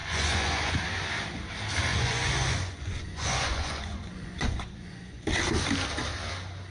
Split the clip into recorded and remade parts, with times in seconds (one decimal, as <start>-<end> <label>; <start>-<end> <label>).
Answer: 0.0-0.8 remade; 0.8-1.9 recorded; 1.9-5.2 remade; 5.2-6.7 recorded